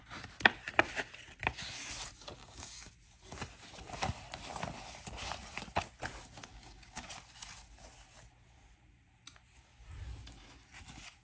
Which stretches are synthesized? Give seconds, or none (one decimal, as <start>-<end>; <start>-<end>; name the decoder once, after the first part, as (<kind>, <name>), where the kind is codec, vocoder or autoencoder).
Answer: 2.4-2.9 (codec, DAC); 6.5-7.1